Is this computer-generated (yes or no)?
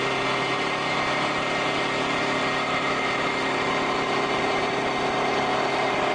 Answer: yes